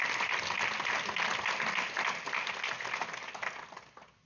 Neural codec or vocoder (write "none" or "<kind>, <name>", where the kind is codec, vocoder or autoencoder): none